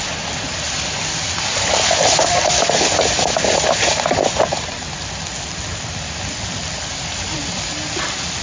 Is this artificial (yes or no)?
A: no